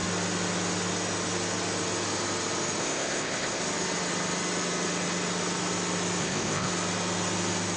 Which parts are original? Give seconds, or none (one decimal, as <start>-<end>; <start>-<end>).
0.0-2.8; 3.6-6.2; 6.7-7.8